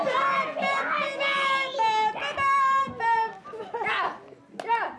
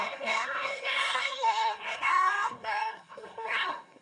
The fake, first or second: second